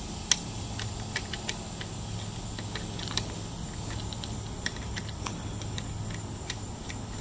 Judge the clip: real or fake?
real